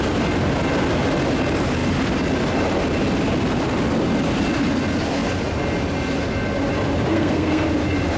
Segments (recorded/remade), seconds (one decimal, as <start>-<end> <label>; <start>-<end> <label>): 0.0-7.1 recorded; 7.1-7.6 remade; 7.6-8.2 recorded